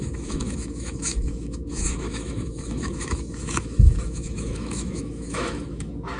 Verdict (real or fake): fake